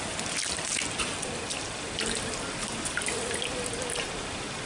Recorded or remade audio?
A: recorded